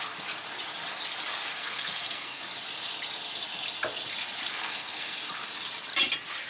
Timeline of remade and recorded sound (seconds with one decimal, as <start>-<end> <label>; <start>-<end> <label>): 0.0-1.5 recorded; 1.5-2.4 remade; 2.4-4.5 recorded; 4.5-5.2 remade; 5.2-6.5 recorded